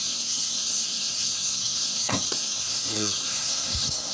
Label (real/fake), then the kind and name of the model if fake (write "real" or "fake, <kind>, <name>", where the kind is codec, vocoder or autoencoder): fake, codec, SNAC